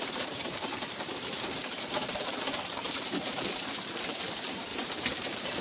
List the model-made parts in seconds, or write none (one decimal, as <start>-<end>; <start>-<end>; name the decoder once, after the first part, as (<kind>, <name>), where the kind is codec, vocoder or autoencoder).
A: 0.0-5.6 (vocoder, BigVGAN v2)